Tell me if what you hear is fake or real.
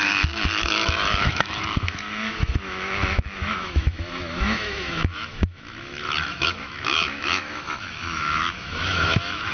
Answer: fake